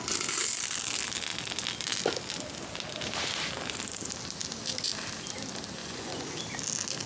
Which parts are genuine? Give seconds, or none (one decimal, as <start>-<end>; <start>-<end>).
0.0-5.8; 6.3-7.1